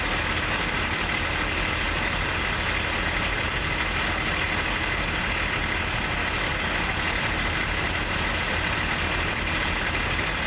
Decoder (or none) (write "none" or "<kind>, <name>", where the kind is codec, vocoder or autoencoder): none